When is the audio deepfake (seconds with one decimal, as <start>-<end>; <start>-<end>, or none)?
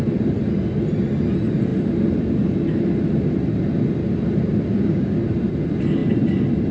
4.7-5.2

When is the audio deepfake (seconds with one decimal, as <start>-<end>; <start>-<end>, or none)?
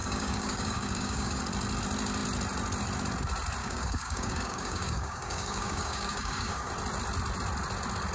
0.0-1.4; 3.6-6.7